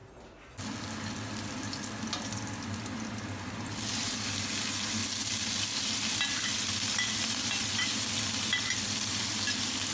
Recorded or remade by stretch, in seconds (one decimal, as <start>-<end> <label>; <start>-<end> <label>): 0.0-9.9 recorded

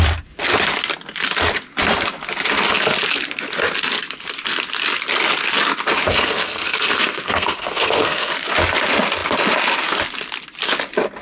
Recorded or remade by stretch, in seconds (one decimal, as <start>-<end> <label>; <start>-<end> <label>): 0.0-6.1 recorded; 6.1-8.3 remade; 8.3-11.2 recorded

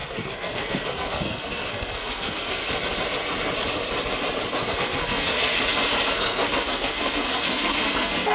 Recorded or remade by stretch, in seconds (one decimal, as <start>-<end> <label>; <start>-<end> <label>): 0.0-2.6 remade; 2.6-4.7 recorded; 4.7-5.5 remade; 5.5-6.1 recorded; 6.1-8.3 remade

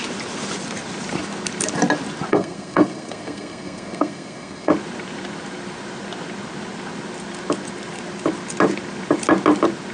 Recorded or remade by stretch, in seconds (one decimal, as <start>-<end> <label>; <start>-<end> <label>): 0.0-2.3 recorded; 2.3-4.7 remade; 4.7-9.9 recorded

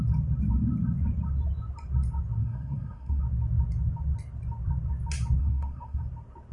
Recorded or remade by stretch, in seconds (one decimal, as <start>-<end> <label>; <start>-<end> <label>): 0.0-2.4 recorded; 2.4-3.2 remade; 3.2-5.4 recorded; 5.4-6.0 remade; 6.0-6.5 recorded

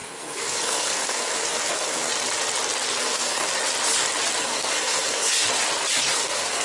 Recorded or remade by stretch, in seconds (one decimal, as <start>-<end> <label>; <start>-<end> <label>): 0.0-2.1 remade; 2.1-3.0 recorded; 3.0-3.5 remade; 3.5-4.4 recorded; 4.4-5.3 remade; 5.3-6.1 recorded; 6.1-6.6 remade

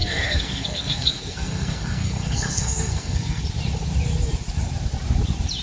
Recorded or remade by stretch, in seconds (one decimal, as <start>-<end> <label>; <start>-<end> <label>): 0.0-3.4 remade; 3.4-5.6 recorded

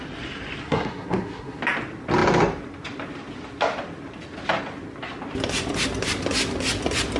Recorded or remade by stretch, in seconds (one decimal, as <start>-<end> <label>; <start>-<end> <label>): 0.0-0.6 recorded; 0.6-1.6 remade; 1.6-7.2 recorded